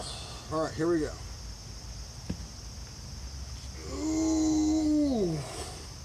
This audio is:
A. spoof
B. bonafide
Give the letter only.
B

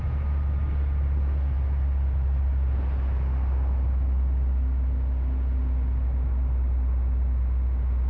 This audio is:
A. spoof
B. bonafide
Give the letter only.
B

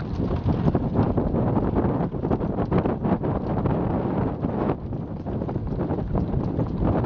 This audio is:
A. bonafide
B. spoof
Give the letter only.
A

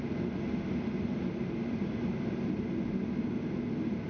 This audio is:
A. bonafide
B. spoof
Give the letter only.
A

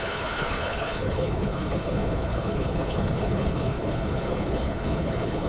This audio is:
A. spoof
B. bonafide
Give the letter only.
A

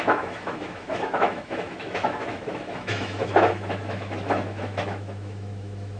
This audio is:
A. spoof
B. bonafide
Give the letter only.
A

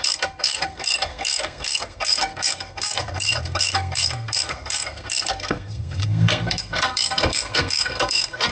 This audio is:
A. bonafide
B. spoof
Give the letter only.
B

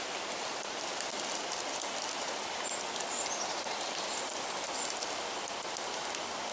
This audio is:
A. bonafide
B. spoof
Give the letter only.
A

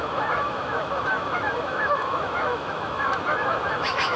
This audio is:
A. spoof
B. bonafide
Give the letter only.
A